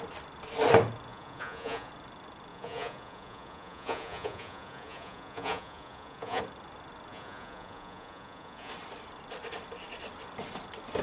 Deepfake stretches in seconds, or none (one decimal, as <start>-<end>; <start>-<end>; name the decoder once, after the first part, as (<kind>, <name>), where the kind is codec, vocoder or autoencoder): 1.1-1.9 (vocoder, Vocos); 2.5-6.4; 7.1-8.7